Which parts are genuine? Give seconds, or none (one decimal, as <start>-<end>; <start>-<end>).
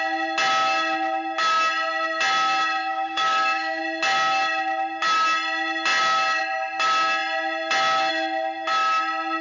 0.0-2.8; 3.8-9.4